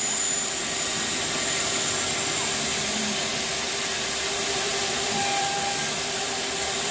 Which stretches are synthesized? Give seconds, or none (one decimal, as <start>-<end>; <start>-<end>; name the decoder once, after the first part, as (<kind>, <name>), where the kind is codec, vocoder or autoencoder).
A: 0.0-0.6 (vocoder, BigVGAN v2); 2.7-6.9